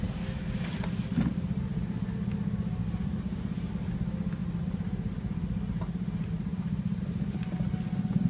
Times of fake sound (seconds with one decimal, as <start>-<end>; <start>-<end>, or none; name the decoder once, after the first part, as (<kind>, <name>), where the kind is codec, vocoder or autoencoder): 2.8-3.7 (vocoder, BigVGAN v2); 4.4-7.0